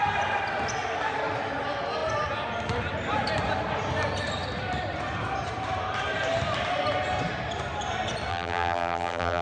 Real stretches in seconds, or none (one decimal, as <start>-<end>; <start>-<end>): 0.0-8.3